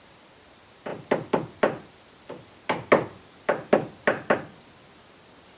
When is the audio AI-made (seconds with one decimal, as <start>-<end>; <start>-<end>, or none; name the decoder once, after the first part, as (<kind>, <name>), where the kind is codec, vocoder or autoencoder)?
none